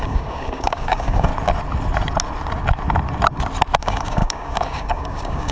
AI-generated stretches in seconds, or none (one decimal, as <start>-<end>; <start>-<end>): 0.0-1.3; 3.8-5.5